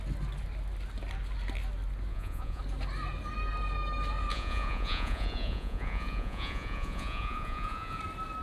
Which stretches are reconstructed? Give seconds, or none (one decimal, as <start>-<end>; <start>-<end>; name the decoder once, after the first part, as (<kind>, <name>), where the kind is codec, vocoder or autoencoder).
2.1-2.6 (vocoder, Vocos); 4.3-8.0